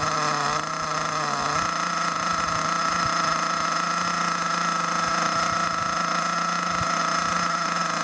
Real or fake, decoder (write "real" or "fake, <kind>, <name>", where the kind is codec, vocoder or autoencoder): real